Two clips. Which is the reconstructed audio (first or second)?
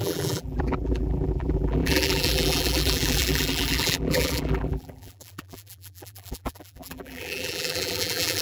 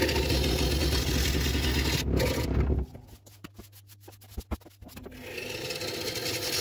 first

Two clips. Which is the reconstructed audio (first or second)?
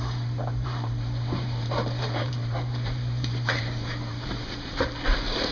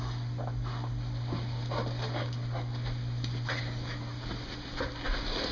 first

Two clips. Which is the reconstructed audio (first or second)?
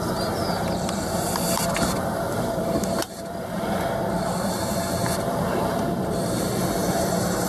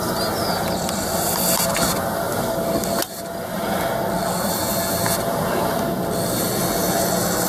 first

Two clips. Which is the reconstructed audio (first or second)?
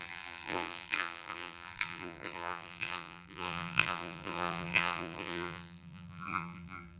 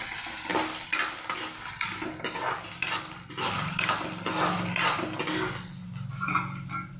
first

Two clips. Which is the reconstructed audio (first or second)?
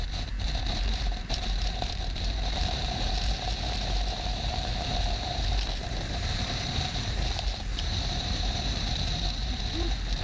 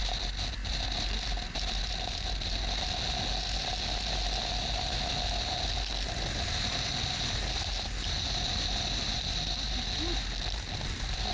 first